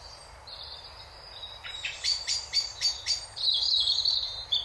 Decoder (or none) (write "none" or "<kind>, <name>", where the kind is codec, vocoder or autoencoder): vocoder, BigVGAN v2